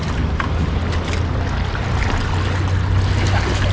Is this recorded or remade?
recorded